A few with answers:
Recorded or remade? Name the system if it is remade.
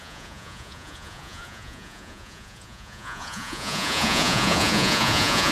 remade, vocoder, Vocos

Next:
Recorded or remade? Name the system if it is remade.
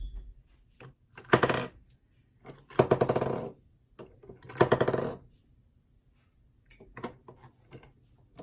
recorded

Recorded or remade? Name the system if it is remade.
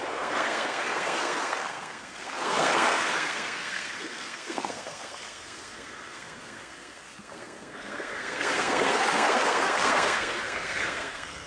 remade, codec, SNAC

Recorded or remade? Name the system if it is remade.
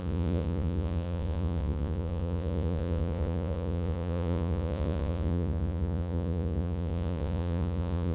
remade, vocoder, Vocos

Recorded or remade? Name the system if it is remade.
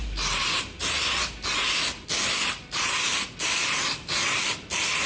recorded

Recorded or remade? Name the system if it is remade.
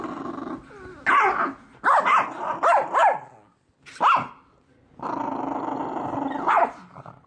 recorded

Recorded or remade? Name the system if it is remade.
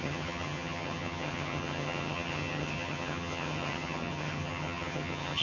remade, vocoder, HiFi-GAN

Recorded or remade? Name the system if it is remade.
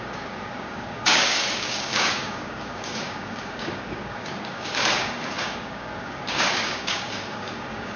remade, codec, DAC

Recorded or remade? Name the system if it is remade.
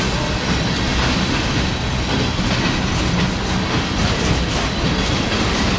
recorded